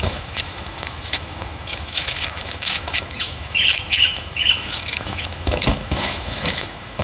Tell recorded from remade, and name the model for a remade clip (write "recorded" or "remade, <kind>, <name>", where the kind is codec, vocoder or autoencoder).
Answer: remade, autoencoder, DAC-VAE